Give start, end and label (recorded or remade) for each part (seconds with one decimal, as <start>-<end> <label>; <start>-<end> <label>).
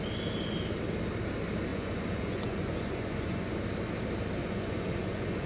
0.0-1.7 recorded; 1.7-3.5 remade; 3.5-4.4 recorded; 4.4-5.5 remade